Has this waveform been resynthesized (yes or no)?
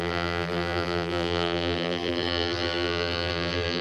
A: yes